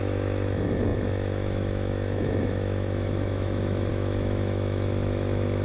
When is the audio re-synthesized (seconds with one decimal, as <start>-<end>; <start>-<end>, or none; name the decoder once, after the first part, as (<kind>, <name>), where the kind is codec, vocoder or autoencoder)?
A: 0.0-5.6 (autoencoder, DAC-VAE)